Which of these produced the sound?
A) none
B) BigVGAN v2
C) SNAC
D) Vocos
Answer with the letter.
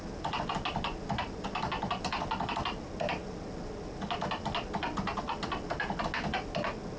A